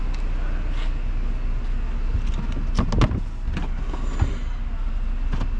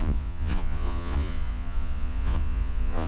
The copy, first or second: second